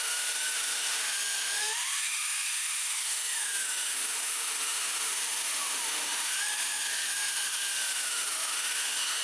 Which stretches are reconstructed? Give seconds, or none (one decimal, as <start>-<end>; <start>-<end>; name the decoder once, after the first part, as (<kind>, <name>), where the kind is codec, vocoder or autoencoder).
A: 0.0-9.2 (autoencoder, DAC-VAE)